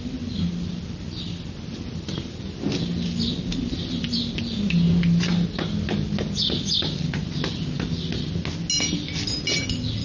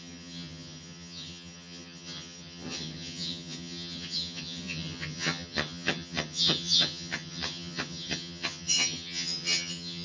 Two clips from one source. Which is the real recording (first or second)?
first